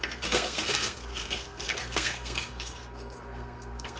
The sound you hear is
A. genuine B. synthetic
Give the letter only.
B